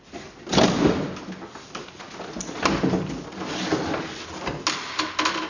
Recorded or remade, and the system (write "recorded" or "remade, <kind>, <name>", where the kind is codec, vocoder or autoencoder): recorded